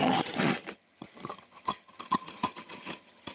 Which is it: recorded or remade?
remade